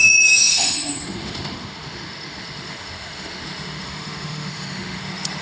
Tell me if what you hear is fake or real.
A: fake